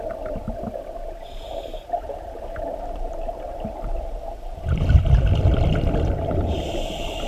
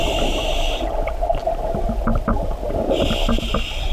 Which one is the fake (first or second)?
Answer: first